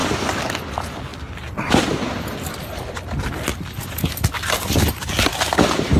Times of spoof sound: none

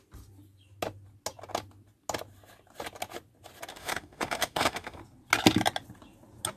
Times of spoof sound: 3.7-5.0 (autoencoder, DAC-VAE)

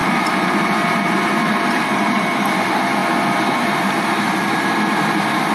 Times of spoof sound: 0.0-3.0 (vocoder, BigVGAN v2); 3.6-5.5

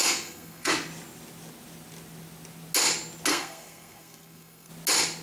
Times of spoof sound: 0.0-0.7 (codec, SNAC); 3.3-4.7

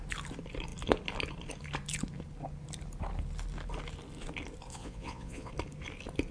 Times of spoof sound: 4.7-5.5 (vocoder, Vocos)

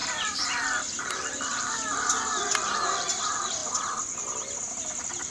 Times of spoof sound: 0.0-3.2 (vocoder, BigVGAN v2)

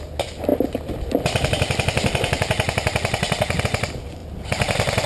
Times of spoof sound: none

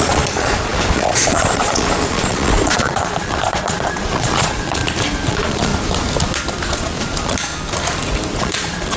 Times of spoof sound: 0.0-4.8 (vocoder, Vocos); 5.3-5.7; 6.7-7.5; 8.4-9.0